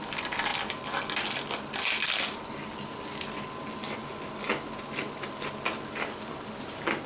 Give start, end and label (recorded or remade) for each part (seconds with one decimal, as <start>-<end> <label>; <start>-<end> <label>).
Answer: 0.0-7.1 recorded